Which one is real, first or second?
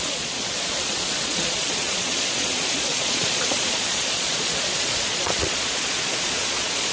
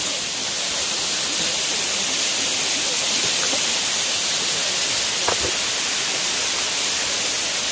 second